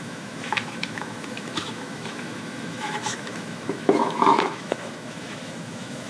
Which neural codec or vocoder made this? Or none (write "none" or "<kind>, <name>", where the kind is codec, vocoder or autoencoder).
autoencoder, DAC-VAE